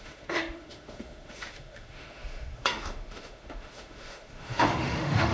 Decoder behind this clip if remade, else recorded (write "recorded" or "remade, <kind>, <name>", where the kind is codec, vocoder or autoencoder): remade, autoencoder, DAC-VAE